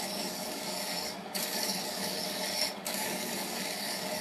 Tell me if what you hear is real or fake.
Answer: fake